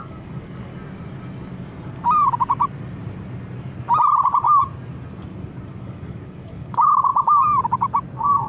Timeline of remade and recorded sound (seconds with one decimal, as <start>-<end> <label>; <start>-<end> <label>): 0.0-0.7 remade; 0.7-5.8 recorded; 5.8-7.1 remade; 7.1-8.5 recorded